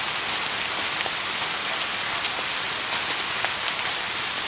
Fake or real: real